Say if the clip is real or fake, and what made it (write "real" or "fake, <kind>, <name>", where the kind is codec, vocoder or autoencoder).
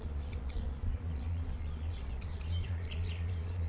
fake, vocoder, Vocos